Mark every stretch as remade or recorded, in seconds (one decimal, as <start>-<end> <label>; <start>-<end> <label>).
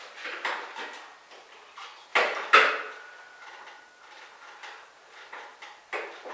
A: 0.0-6.3 recorded